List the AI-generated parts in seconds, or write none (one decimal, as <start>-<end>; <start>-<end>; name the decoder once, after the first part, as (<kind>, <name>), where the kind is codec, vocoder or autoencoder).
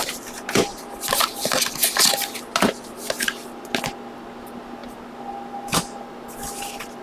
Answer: none